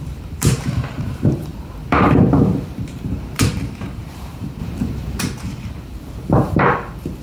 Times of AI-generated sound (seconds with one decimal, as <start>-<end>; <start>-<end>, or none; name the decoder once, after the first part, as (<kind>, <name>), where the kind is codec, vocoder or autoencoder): 0.0-7.2 (vocoder, BigVGAN v2)

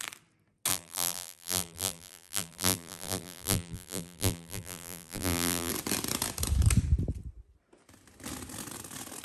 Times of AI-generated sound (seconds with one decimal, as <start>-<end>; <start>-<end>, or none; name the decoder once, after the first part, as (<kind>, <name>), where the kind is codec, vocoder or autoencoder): 0.7-5.7 (vocoder, BigVGAN v2)